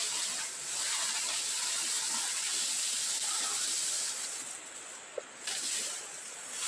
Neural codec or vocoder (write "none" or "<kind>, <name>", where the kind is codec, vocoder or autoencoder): none